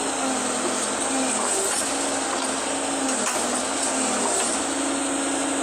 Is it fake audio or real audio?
real